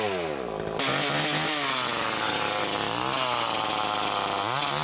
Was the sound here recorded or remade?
recorded